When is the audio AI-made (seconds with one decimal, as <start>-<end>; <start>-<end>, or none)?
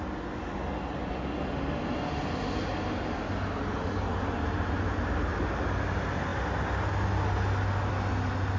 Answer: none